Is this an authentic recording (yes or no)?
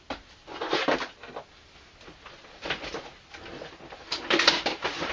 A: yes